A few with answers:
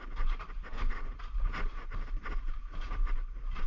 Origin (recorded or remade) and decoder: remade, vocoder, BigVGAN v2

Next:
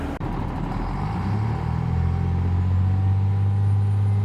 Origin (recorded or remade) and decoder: recorded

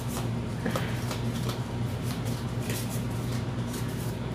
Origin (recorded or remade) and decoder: remade, vocoder, BigVGAN v2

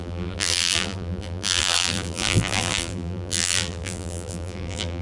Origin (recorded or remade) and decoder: remade, vocoder, BigVGAN v2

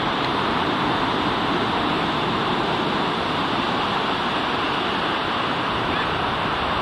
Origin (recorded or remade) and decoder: remade, vocoder, BigVGAN v2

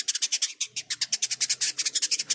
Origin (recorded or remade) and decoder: recorded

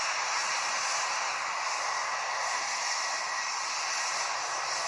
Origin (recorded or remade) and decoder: remade, vocoder, BigVGAN v2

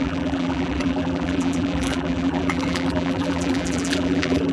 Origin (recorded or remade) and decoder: remade, vocoder, BigVGAN v2